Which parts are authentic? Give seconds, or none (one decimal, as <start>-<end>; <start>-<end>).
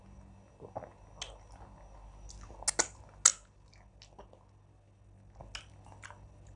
0.0-6.6